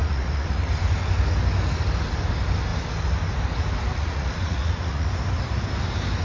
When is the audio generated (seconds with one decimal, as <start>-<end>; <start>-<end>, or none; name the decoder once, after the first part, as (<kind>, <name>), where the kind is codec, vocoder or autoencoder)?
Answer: 0.0-0.7 (vocoder, Vocos); 3.9-5.1